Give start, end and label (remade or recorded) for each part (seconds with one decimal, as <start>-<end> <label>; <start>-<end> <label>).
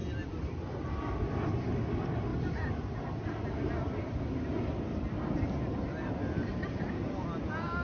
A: 0.0-7.8 recorded